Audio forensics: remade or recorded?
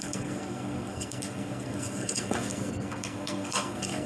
remade